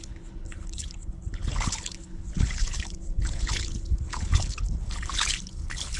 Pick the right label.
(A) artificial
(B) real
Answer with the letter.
A